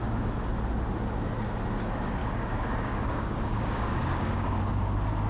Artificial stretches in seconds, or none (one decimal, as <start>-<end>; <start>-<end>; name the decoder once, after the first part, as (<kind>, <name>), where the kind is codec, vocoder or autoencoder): 2.2-4.7 (codec, DAC)